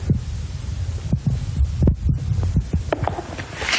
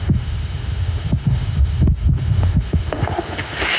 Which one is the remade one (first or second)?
second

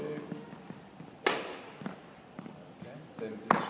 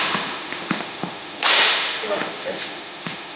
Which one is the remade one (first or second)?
second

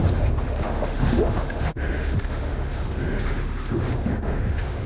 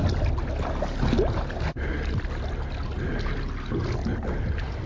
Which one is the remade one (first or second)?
first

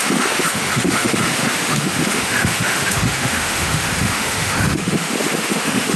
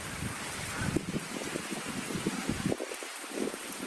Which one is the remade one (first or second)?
first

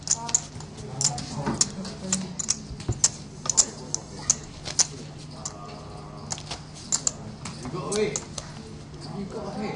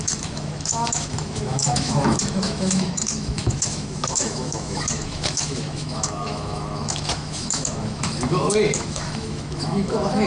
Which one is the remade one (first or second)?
second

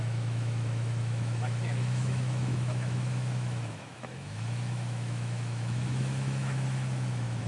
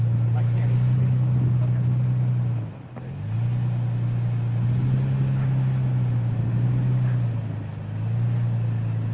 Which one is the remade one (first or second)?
first